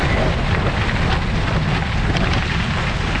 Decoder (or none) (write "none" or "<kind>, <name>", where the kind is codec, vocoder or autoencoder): none